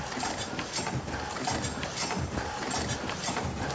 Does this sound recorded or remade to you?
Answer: recorded